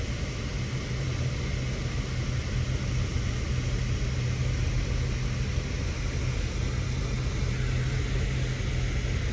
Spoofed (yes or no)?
no